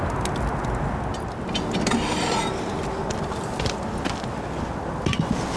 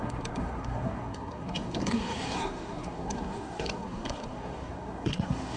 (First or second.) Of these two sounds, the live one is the first